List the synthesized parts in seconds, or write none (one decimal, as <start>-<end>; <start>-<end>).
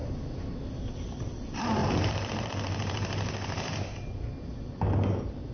none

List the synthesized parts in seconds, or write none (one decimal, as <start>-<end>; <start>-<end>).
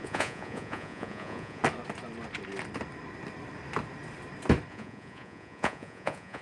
0.0-1.6; 4.7-6.4